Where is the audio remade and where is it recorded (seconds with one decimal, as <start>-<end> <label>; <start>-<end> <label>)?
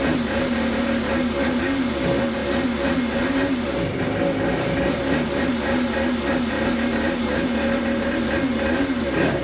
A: 0.0-9.4 recorded